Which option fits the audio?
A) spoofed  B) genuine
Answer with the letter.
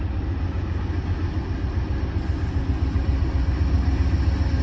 B